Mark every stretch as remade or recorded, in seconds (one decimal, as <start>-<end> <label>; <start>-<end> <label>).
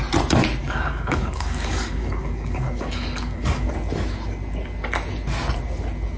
0.0-0.6 recorded; 0.6-3.7 remade; 3.7-6.2 recorded